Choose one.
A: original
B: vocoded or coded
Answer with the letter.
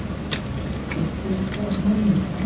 A